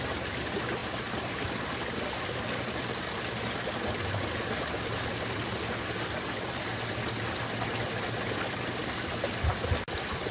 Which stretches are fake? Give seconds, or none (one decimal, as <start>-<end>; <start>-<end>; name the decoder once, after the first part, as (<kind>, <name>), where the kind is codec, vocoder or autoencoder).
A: none